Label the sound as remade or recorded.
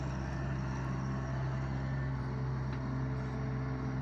recorded